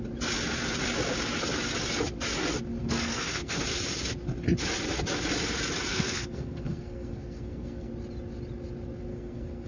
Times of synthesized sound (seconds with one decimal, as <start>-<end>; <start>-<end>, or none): 2.8-3.6; 5.9-7.9; 9.1-9.7

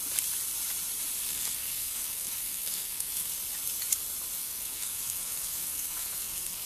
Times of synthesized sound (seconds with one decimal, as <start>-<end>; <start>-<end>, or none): 1.3-3.3; 4.4-6.7

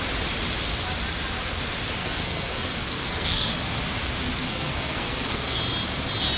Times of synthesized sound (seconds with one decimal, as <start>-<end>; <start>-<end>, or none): 2.0-3.8; 4.5-5.6

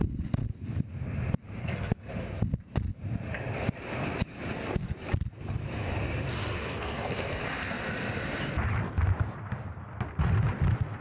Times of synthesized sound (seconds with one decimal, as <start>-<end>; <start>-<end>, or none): 1.6-2.1; 6.6-7.4

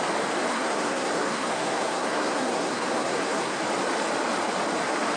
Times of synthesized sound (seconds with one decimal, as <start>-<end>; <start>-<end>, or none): 0.5-3.6

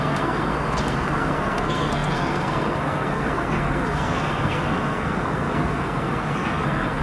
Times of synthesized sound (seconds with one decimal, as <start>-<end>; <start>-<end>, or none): 0.0-7.0

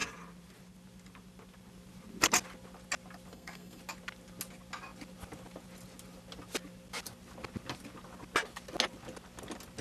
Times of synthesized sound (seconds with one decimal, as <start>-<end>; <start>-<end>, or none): 3.3-3.8

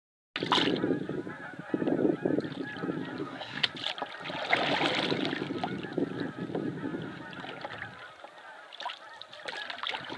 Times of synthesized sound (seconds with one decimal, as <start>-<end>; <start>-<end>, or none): 3.2-3.7